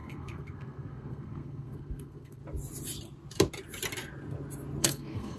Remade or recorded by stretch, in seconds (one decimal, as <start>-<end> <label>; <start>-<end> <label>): 0.0-2.4 remade; 2.4-4.8 recorded; 4.8-5.4 remade